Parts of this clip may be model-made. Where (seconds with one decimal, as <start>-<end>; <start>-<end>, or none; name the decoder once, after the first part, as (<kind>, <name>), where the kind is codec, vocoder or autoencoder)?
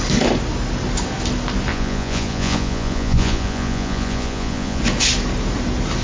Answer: 1.7-4.8 (vocoder, Vocos)